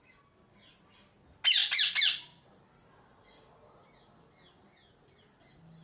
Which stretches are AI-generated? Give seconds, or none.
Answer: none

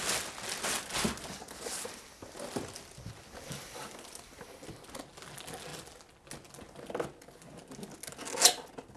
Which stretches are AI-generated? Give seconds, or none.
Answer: none

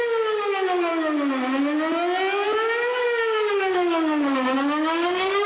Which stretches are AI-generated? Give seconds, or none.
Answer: 0.0-0.9; 3.5-5.5

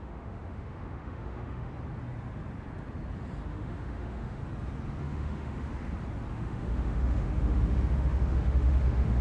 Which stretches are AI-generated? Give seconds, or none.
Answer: 0.0-1.7; 3.5-4.4; 5.0-5.7; 6.3-9.2

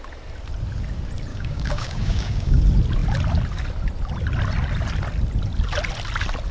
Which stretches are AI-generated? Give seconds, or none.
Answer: 1.3-2.6

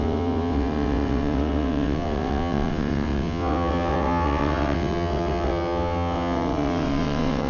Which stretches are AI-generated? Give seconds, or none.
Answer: 0.0-7.5